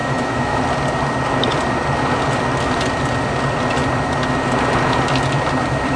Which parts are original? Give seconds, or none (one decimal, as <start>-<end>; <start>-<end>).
0.6-6.0